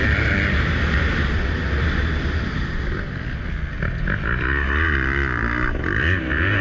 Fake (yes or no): no